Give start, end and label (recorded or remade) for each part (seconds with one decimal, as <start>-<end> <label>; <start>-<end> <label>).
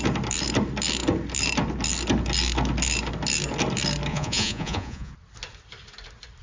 0.0-4.1 recorded; 4.1-5.1 remade; 5.1-6.4 recorded